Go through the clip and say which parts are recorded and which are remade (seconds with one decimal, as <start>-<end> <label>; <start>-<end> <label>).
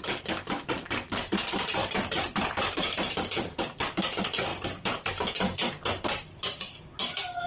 0.0-1.8 recorded; 1.8-3.9 remade; 3.9-4.5 recorded; 4.5-5.1 remade; 5.1-7.5 recorded